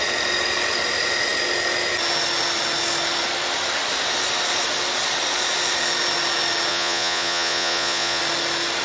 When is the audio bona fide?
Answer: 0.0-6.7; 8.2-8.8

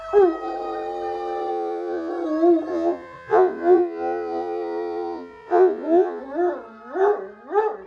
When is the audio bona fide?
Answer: 0.0-1.5; 2.1-2.7; 6.2-7.9

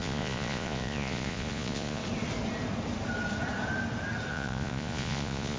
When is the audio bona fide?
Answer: 2.0-4.3

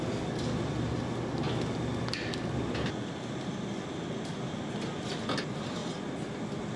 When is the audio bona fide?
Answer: 0.0-6.8